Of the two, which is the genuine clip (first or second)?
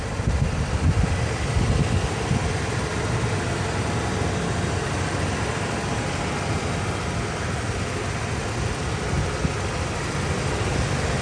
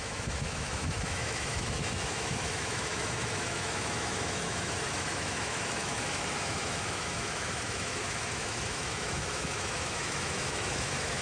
first